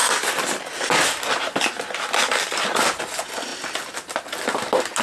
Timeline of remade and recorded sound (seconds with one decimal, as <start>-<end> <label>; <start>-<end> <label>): 0.0-5.0 recorded